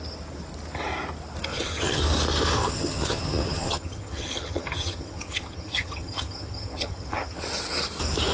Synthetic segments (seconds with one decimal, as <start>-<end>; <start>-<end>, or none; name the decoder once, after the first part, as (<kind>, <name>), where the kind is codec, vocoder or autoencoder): 1.5-2.0 (vocoder, HiFi-GAN); 2.6-7.4